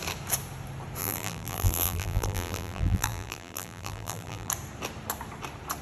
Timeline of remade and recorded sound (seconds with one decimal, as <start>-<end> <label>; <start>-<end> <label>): 0.0-1.0 recorded; 1.0-4.5 remade; 4.5-5.8 recorded